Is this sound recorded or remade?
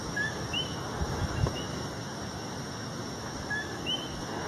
remade